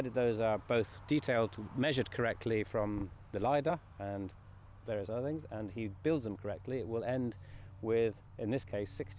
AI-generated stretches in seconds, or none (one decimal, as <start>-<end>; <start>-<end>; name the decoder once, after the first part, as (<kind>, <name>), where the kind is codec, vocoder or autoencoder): none